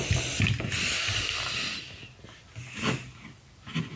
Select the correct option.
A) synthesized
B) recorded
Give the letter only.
B